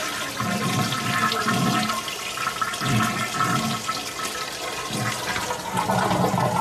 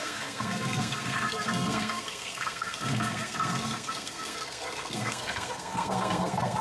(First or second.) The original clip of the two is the first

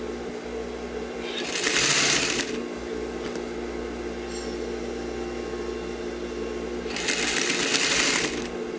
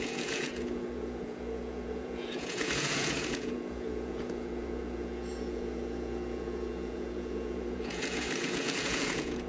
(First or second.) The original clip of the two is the first